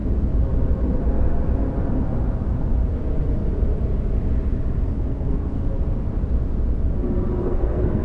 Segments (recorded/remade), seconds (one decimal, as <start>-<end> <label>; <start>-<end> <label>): 0.0-4.8 recorded; 4.8-5.6 remade; 5.6-7.4 recorded; 7.4-8.0 remade